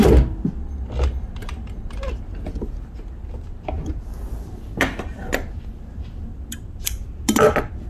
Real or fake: real